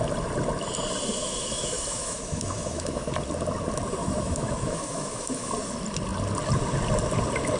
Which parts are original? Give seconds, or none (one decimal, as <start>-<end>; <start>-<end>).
0.0-1.2; 3.1-4.0; 5.5-7.6